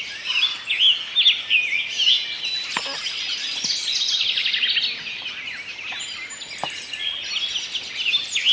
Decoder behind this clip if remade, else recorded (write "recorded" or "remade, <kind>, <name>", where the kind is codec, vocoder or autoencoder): recorded